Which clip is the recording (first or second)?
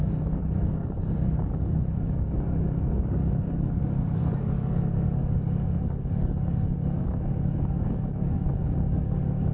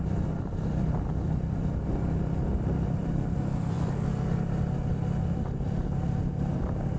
second